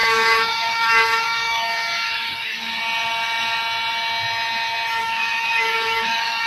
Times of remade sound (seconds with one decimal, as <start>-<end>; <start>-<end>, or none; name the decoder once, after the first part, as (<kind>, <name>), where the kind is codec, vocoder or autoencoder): 0.0-2.8 (codec, DAC); 5.0-6.5